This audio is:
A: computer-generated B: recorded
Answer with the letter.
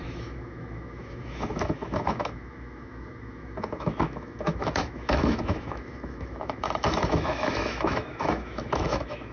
A